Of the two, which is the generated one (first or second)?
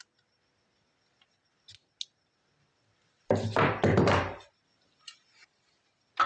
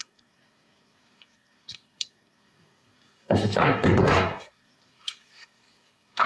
second